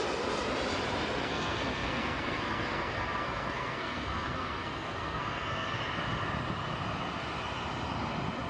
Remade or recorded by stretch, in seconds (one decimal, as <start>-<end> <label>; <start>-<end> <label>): 0.0-1.2 recorded; 1.2-5.8 remade; 5.8-8.5 recorded